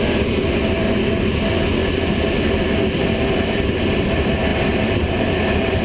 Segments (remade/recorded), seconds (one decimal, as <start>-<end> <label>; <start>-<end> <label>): 0.0-1.8 recorded; 1.8-4.0 remade; 4.0-5.8 recorded